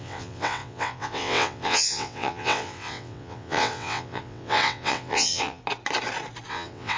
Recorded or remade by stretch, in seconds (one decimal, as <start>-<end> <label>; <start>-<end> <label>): 0.0-5.6 remade; 5.6-6.5 recorded; 6.5-7.0 remade